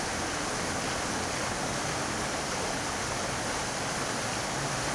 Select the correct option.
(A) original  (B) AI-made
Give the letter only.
A